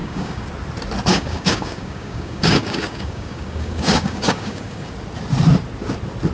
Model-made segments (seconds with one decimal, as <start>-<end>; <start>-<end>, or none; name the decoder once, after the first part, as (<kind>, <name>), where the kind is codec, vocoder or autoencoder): 0.0-0.5 (codec, DAC); 1.1-4.9